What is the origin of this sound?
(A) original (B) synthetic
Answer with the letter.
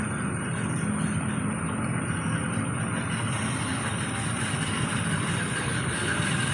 A